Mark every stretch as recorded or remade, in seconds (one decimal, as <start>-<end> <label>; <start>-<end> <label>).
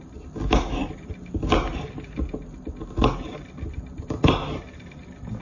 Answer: 0.0-5.4 recorded